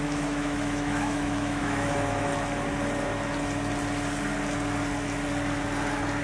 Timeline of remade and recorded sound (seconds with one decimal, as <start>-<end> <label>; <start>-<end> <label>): 0.0-2.3 remade; 2.3-6.2 recorded